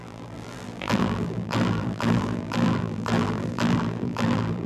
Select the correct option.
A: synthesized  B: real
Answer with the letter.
A